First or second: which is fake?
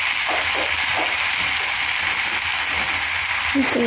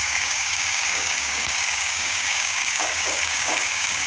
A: second